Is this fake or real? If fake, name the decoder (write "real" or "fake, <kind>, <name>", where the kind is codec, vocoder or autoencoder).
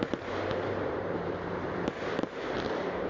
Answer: fake, vocoder, BigVGAN v2